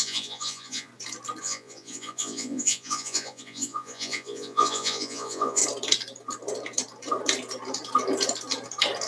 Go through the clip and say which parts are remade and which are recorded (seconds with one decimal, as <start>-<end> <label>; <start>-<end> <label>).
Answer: 0.0-0.9 remade; 0.9-1.4 recorded; 1.4-5.6 remade; 5.6-9.1 recorded